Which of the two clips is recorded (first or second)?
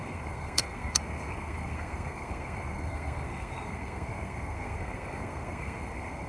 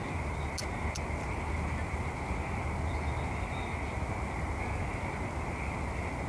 second